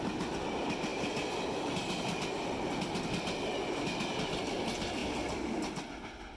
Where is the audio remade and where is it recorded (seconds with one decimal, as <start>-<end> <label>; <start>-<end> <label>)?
0.0-6.4 recorded